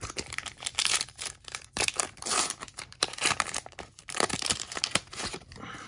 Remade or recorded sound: remade